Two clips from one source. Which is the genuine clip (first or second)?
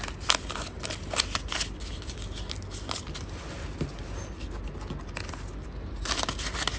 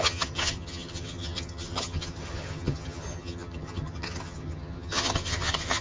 first